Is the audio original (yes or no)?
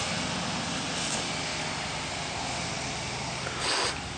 yes